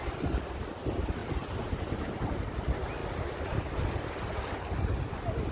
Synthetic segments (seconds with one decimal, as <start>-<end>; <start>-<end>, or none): 1.2-2.4